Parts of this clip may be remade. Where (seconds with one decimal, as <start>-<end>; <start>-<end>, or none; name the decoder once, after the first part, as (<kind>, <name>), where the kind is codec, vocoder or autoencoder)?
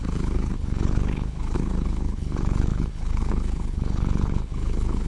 0.0-5.1 (codec, HILCodec)